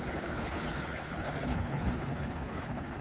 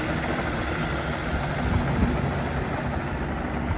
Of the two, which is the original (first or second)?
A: second